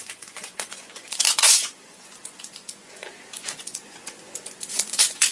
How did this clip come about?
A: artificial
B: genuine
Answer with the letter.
A